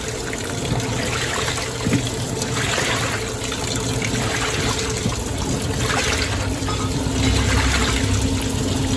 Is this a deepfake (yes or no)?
no